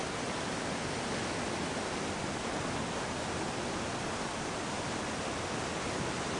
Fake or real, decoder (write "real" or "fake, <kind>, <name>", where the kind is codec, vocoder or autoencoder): real